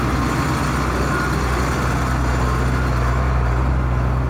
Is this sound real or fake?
real